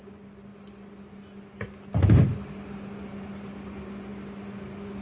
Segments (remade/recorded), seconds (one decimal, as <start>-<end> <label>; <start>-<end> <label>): 0.0-5.0 recorded

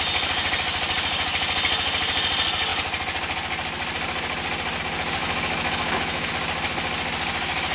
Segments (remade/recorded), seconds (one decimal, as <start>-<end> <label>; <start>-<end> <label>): 0.0-5.2 recorded; 5.2-6.3 remade; 6.3-7.7 recorded

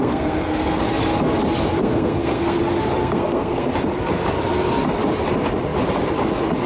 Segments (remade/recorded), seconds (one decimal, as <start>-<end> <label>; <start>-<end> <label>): 0.0-0.8 remade; 0.8-1.8 recorded; 1.8-2.6 remade; 2.6-3.0 recorded; 3.0-3.7 remade; 3.7-6.7 recorded

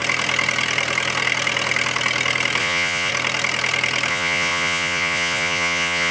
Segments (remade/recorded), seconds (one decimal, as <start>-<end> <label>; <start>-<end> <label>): 0.0-2.6 recorded; 2.6-3.1 remade; 3.1-4.1 recorded; 4.1-6.1 remade

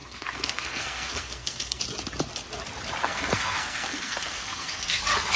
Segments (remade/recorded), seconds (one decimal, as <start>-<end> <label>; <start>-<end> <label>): 0.0-1.8 remade; 1.8-3.0 recorded; 3.0-5.0 remade; 5.0-5.4 recorded

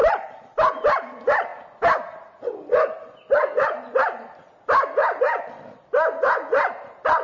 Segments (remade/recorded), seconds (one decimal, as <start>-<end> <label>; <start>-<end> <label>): 0.0-7.2 recorded

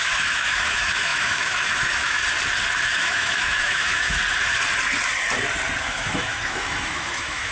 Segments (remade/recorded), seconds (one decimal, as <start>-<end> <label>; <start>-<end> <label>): 0.0-2.2 remade; 2.2-2.8 recorded; 2.8-4.2 remade; 4.2-5.9 recorded; 5.9-7.5 remade